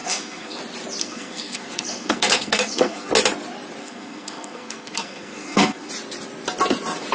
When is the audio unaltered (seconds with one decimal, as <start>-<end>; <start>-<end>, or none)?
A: 0.6-1.0; 3.1-3.8; 5.9-7.1